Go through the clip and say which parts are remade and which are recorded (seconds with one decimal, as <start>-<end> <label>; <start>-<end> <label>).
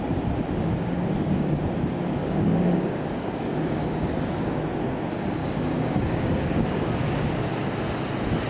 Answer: 0.0-0.8 recorded; 0.8-1.6 remade; 1.6-2.2 recorded; 2.2-4.6 remade; 4.6-5.4 recorded; 5.4-7.3 remade; 7.3-8.5 recorded